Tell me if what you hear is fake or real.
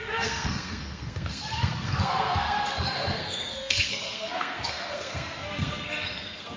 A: fake